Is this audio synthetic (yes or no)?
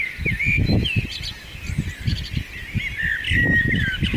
no